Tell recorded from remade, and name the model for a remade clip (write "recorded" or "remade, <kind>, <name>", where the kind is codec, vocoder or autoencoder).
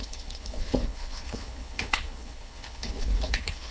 remade, codec, HILCodec